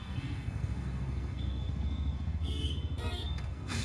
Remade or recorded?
remade